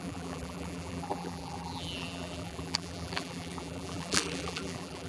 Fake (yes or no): yes